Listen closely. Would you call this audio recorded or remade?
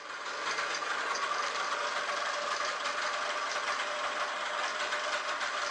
recorded